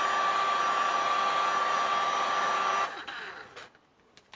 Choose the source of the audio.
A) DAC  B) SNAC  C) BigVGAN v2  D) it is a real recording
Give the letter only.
D